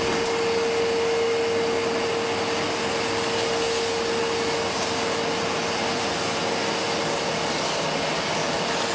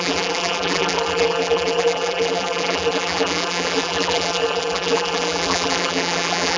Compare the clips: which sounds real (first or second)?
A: first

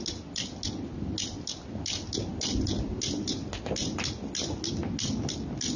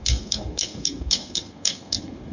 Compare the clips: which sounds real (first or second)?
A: first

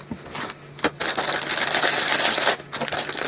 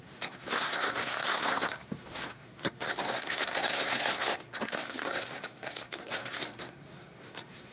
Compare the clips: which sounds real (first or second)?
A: first